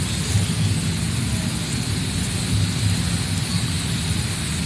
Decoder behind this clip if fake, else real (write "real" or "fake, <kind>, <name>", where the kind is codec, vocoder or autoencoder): real